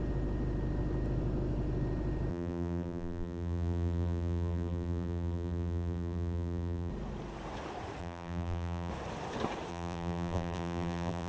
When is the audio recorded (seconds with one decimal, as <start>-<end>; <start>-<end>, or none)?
0.0-2.3; 6.9-8.0; 8.9-9.7